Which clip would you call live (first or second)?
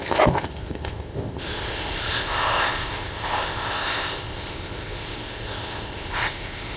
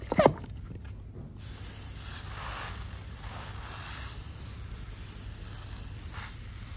second